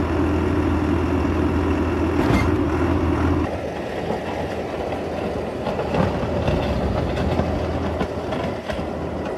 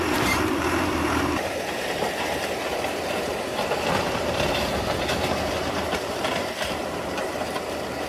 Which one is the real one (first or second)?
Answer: first